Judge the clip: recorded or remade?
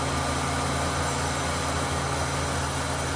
recorded